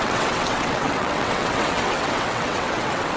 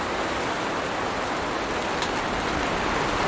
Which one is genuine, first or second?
second